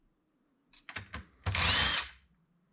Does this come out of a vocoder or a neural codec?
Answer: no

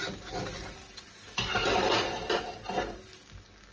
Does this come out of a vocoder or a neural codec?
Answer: no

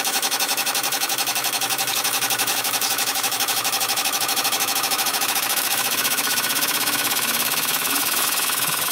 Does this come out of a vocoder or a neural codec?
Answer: yes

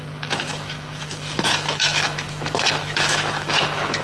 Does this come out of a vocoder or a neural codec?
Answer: yes